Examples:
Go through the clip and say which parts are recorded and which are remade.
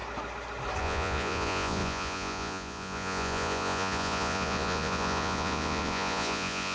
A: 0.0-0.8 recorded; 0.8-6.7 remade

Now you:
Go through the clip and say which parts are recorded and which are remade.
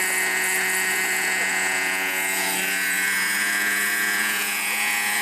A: 0.0-5.2 remade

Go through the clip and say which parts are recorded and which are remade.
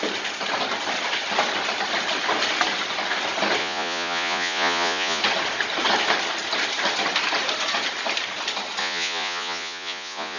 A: 0.0-3.6 recorded; 3.6-5.2 remade; 5.2-8.8 recorded; 8.8-10.4 remade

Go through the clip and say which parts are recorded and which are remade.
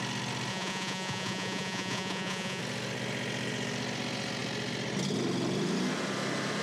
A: 0.0-0.5 recorded; 0.5-2.6 remade; 2.6-6.6 recorded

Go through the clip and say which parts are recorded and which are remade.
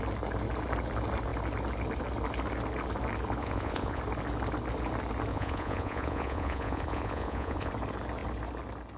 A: 0.0-3.4 recorded; 3.4-4.0 remade; 4.0-5.3 recorded; 5.3-7.7 remade; 7.7-9.0 recorded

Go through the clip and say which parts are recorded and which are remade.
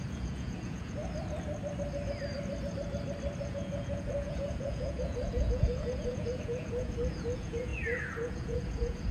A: 0.0-1.0 remade; 1.0-3.4 recorded; 3.4-9.1 remade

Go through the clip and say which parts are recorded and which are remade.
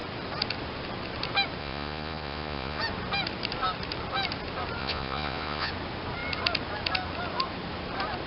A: 0.0-1.6 recorded; 1.6-2.8 remade; 2.8-4.8 recorded; 4.8-5.7 remade; 5.7-8.3 recorded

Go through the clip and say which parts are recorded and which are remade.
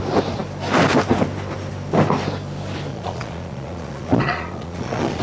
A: 0.0-2.9 recorded; 2.9-5.2 remade